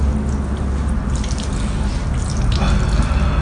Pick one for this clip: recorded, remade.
recorded